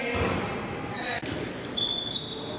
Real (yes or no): yes